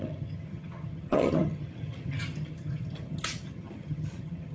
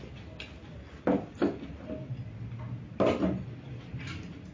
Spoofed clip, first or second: first